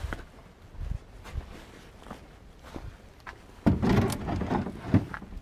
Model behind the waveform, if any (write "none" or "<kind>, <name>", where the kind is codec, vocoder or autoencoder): none